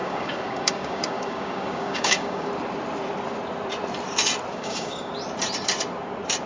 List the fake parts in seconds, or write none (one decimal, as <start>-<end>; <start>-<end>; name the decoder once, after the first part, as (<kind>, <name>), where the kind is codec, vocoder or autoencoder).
0.0-2.5 (codec, DAC); 4.5-5.1